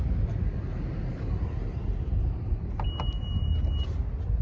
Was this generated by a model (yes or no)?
no